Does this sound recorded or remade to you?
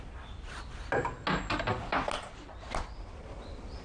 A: recorded